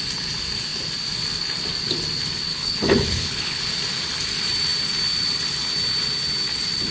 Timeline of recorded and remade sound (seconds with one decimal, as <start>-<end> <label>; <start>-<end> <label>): 0.0-2.5 recorded; 2.5-3.6 remade; 3.6-6.9 recorded